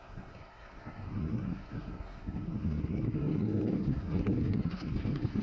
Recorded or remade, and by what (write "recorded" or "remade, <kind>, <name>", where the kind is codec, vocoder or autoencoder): remade, codec, SNAC